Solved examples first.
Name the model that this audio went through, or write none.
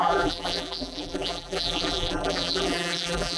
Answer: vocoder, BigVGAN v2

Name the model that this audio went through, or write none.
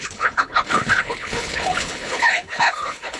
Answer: codec, HILCodec